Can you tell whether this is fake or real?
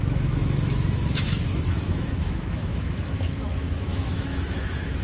fake